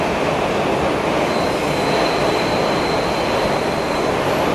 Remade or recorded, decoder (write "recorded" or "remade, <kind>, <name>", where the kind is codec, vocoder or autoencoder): recorded